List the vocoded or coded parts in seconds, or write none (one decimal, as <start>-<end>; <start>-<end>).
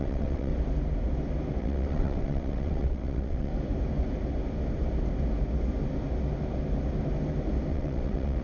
0.0-0.5; 1.6-3.5; 7.7-8.4